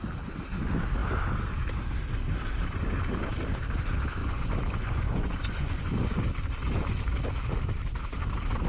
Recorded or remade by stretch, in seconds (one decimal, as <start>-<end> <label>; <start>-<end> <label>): 0.0-4.2 recorded; 4.2-6.1 remade; 6.1-8.7 recorded